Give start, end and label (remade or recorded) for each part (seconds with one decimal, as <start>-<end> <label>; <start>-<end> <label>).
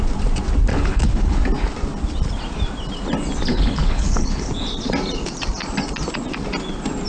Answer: 0.0-0.7 recorded; 0.7-1.4 remade; 1.4-3.5 recorded; 3.5-4.5 remade; 4.5-7.1 recorded